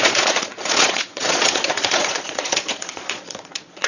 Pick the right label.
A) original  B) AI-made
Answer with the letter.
B